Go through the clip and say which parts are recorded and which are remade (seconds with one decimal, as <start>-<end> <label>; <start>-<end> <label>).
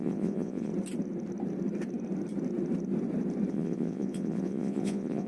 0.0-0.7 remade; 0.7-3.5 recorded; 3.5-5.3 remade